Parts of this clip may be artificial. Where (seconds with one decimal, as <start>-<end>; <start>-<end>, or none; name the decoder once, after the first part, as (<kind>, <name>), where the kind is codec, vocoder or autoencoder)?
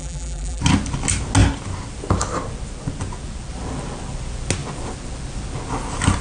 0.0-0.6 (vocoder, BigVGAN v2)